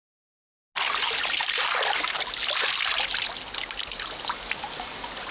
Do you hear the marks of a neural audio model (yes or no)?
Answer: no